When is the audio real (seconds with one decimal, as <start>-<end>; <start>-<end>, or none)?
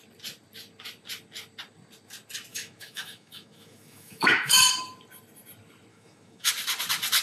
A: 0.0-2.5; 4.7-5.9; 6.5-7.2